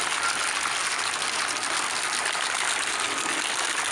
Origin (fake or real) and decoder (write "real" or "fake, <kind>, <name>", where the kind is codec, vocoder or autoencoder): real